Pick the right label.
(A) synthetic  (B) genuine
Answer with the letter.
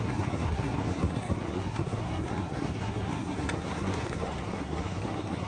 A